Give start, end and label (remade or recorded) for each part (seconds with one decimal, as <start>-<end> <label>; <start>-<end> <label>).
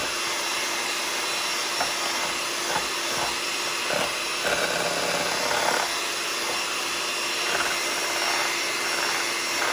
0.0-9.7 recorded